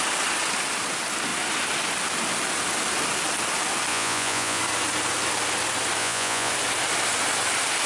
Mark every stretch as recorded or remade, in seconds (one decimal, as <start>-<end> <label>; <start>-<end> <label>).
0.0-3.9 recorded; 3.9-4.6 remade; 4.6-6.0 recorded; 6.0-6.5 remade; 6.5-7.9 recorded